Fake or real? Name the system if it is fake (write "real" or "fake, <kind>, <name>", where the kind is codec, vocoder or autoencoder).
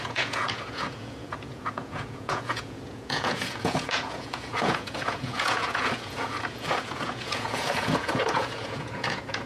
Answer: fake, vocoder, Vocos